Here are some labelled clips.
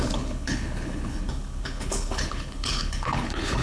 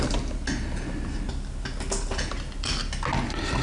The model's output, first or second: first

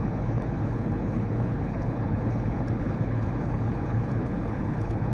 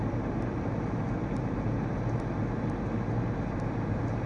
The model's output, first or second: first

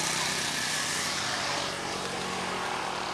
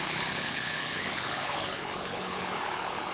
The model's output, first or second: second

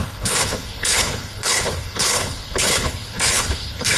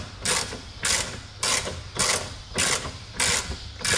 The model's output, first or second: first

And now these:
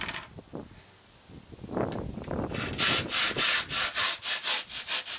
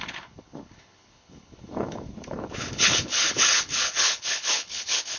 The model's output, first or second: second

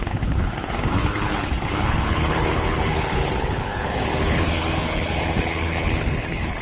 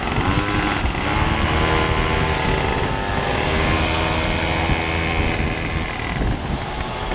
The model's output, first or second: first